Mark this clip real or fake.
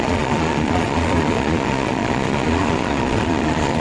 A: fake